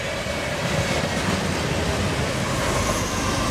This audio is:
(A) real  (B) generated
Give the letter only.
B